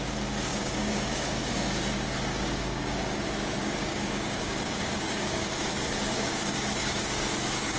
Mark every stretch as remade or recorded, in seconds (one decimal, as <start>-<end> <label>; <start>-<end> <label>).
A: 0.0-0.5 recorded; 0.5-1.5 remade; 1.5-2.3 recorded; 2.3-3.2 remade; 3.2-3.6 recorded; 3.6-7.8 remade